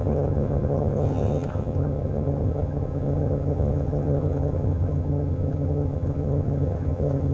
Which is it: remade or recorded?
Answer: remade